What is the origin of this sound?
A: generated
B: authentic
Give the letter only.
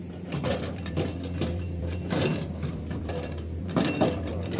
A